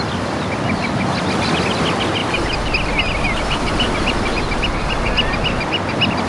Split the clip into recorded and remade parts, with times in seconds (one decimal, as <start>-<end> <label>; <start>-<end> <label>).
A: 0.0-6.3 recorded